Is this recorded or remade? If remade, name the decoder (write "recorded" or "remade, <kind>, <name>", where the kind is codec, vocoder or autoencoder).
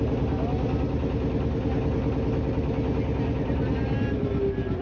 recorded